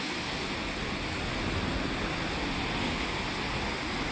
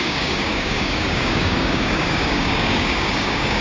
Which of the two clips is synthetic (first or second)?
second